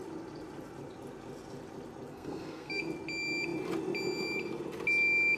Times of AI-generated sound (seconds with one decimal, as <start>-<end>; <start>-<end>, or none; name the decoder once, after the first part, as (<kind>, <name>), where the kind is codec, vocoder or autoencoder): 2.1-2.8 (codec, SNAC)